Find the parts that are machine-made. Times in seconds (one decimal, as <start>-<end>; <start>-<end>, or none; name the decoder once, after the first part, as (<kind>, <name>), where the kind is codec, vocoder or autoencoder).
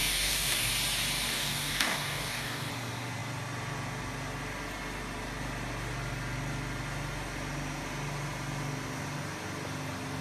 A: 0.0-0.7 (codec, DAC); 1.3-2.7